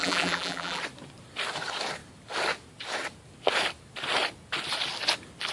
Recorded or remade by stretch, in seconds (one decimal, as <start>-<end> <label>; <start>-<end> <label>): 0.0-0.8 remade; 0.8-5.5 recorded